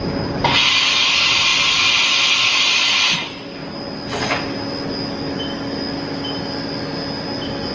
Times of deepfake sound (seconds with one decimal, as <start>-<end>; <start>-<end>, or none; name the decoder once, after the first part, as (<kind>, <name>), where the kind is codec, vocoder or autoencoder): none

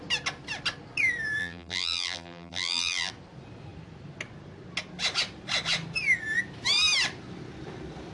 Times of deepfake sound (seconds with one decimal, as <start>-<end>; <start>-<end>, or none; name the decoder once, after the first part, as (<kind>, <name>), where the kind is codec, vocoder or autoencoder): 1.4-3.1 (vocoder, BigVGAN v2)

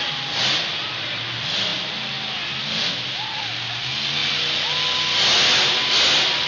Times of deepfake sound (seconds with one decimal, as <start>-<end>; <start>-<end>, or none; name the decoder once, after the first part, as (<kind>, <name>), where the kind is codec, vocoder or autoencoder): none

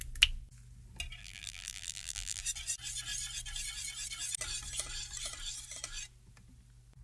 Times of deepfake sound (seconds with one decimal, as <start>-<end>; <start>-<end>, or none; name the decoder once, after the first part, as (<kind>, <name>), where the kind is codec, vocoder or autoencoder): 1.2-2.4 (vocoder, BigVGAN v2)

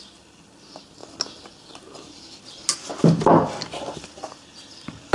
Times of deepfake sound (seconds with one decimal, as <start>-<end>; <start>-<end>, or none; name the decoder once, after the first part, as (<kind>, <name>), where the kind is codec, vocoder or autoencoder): none

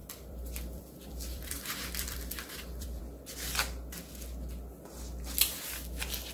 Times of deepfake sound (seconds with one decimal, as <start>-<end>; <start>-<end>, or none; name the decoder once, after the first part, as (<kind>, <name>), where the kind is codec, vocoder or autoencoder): 0.0-3.0 (vocoder, BigVGAN v2)

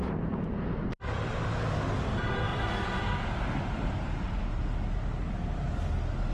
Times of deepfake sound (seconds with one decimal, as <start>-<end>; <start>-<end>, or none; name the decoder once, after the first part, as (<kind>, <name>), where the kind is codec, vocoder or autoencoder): 2.5-4.3 (vocoder, BigVGAN v2)

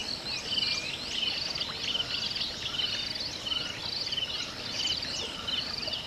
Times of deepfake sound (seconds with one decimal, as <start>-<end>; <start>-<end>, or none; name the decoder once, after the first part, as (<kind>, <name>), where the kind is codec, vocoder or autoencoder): 4.9-6.1 (vocoder, BigVGAN v2)